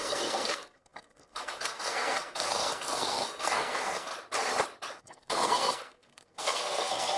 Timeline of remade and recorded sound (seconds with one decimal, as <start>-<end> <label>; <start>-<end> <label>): 0.0-4.1 remade; 4.1-5.0 recorded; 5.0-7.2 remade